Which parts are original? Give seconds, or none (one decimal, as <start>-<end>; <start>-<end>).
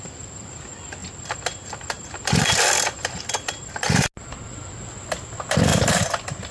0.0-6.5